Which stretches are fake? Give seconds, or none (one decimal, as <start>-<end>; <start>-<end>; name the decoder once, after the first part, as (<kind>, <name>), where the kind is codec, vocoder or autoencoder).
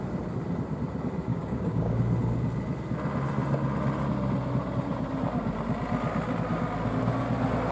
1.3-2.0 (codec, DAC)